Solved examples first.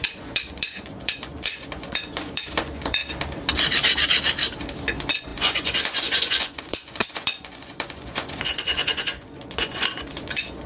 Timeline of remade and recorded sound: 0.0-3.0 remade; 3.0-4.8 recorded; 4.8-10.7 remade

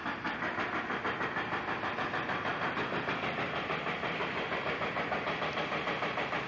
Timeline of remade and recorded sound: 0.0-2.5 recorded; 2.5-4.6 remade; 4.6-6.5 recorded